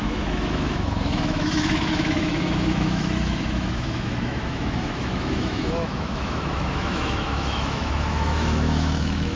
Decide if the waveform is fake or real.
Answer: fake